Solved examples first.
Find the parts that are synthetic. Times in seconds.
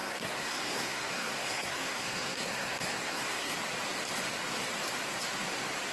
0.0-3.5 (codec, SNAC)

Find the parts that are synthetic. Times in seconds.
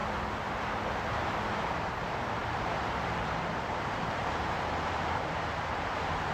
1.5-6.3 (vocoder, BigVGAN v2)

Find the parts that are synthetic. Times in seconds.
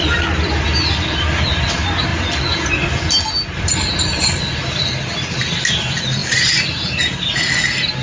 none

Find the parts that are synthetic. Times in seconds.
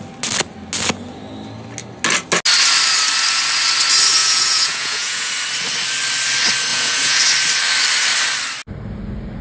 4.2-5.3 (vocoder, Vocos); 6.7-7.2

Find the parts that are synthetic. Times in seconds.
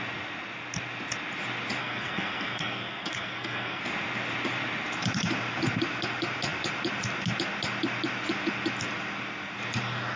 1.8-3.8 (codec, SNAC)